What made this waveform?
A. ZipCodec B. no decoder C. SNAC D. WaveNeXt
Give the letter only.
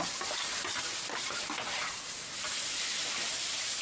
B